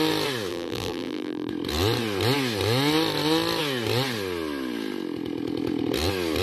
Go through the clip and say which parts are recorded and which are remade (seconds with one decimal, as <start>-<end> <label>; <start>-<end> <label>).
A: 0.0-0.5 recorded; 0.5-1.5 remade; 1.5-6.4 recorded